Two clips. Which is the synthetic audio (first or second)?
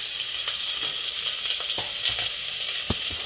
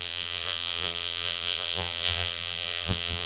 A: second